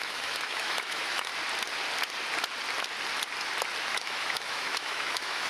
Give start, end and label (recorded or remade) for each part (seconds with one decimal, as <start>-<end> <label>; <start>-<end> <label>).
0.0-1.3 remade; 1.3-3.9 recorded; 3.9-5.5 remade